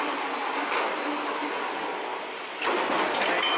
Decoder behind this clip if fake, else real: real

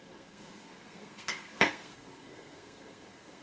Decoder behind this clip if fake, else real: fake, codec, SNAC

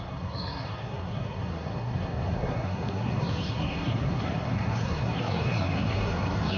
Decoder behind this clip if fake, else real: fake, codec, SNAC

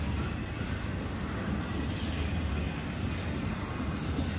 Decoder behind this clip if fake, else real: real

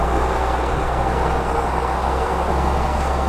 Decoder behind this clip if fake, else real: fake, codec, SNAC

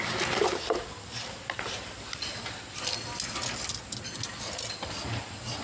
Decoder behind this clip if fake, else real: real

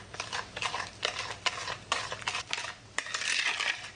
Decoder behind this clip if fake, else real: real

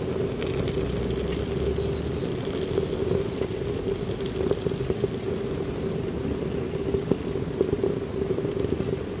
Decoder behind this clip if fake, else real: real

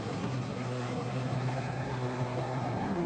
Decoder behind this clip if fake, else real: fake, codec, SNAC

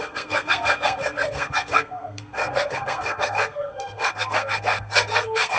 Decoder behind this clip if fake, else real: fake, codec, SNAC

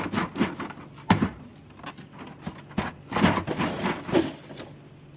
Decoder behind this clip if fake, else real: real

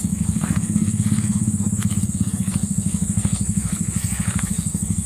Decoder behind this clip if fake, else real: fake, codec, SNAC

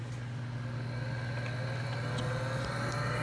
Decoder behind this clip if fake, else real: real